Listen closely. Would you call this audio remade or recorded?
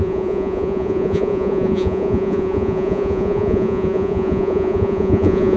remade